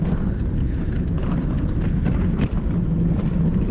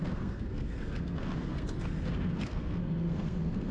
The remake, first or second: second